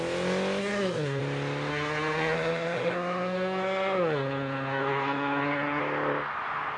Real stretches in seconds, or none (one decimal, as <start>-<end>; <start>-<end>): 0.0-0.6; 1.2-1.7; 5.8-6.8